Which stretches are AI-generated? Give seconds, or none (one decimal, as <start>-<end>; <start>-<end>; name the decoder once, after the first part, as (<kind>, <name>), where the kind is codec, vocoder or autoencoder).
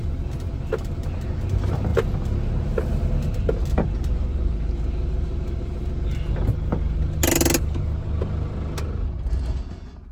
none